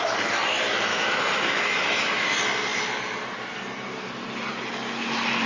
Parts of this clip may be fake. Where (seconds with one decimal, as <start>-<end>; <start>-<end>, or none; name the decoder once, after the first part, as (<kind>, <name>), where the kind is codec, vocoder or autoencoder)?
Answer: 0.9-2.3 (autoencoder, DAC-VAE)